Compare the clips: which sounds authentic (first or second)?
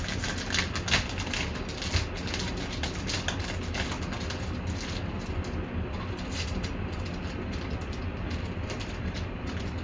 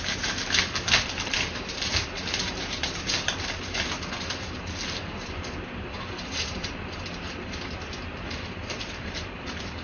first